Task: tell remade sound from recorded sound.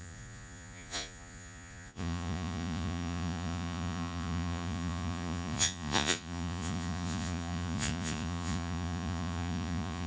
remade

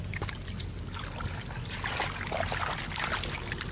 recorded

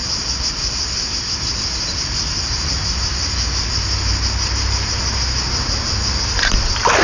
recorded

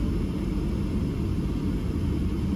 recorded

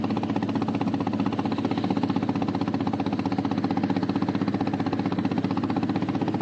recorded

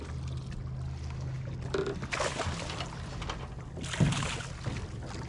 recorded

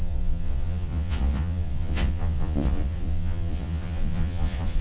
remade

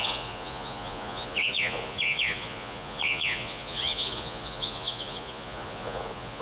remade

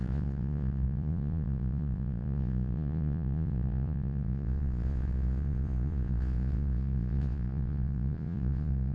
remade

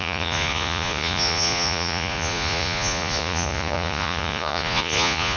remade